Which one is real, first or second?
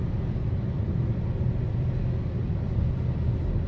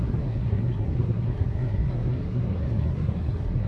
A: first